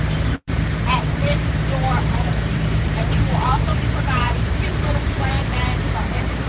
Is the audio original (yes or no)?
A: no